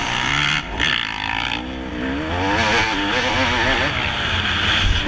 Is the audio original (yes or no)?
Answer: yes